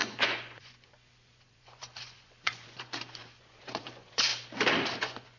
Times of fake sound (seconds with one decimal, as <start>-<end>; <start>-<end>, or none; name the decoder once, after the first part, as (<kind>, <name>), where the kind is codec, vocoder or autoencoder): 0.0-4.3 (vocoder, Vocos); 5.0-5.4

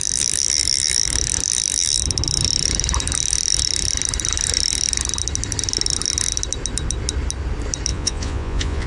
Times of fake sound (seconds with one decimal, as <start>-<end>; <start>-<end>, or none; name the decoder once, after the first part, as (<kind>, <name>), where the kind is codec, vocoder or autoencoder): 7.9-8.9 (vocoder, Vocos)

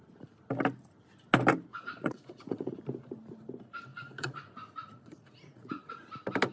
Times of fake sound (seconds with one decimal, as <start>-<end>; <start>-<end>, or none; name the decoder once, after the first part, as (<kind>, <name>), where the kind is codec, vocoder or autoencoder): 1.7-2.8 (vocoder, Vocos); 3.9-5.9

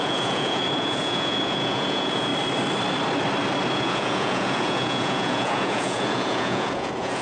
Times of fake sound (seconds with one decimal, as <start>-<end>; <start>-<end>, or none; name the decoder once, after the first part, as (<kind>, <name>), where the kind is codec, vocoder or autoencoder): 0.0-2.3 (vocoder, Vocos); 3.7-7.2

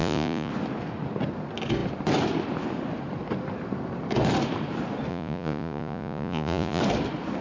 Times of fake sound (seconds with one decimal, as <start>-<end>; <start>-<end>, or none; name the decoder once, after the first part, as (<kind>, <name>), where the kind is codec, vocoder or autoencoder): 0.0-0.5 (vocoder, Vocos); 5.1-6.8

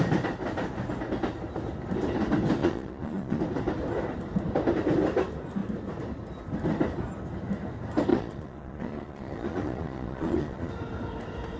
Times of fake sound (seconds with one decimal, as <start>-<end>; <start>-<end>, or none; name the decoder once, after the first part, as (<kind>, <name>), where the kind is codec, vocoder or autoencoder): 2.6-3.4 (vocoder, Vocos); 8.1-10.7

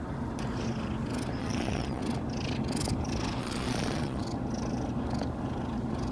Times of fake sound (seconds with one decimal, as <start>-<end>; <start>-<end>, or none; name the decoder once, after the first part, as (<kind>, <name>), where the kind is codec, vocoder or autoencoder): 1.4-2.0 (vocoder, Vocos); 3.4-4.2